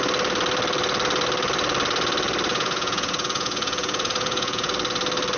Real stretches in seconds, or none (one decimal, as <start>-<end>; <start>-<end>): 0.0-2.5; 4.7-5.4